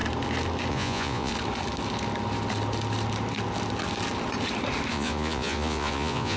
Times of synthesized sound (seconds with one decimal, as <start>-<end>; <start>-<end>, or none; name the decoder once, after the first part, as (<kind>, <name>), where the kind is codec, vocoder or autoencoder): 0.7-1.3 (vocoder, Vocos); 4.9-6.4